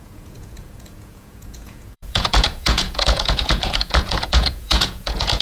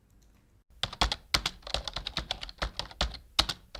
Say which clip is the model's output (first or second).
first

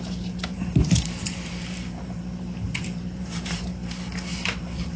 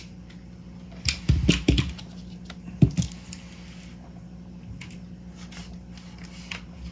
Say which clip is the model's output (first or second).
first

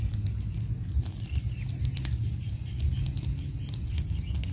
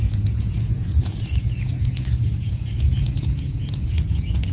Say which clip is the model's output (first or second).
second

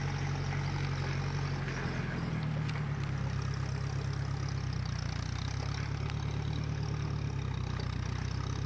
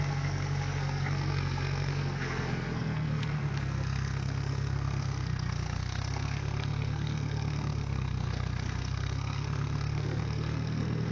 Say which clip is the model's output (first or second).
second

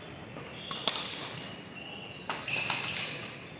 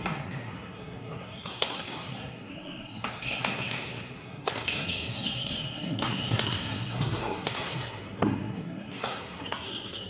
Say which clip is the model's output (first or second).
second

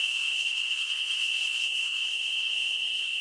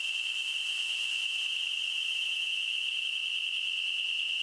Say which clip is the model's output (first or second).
first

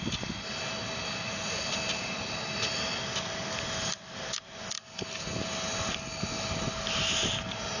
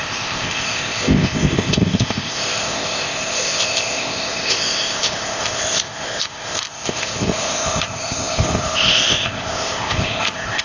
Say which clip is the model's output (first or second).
second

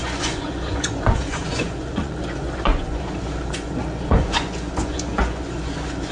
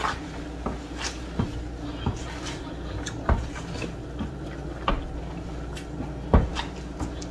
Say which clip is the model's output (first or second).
first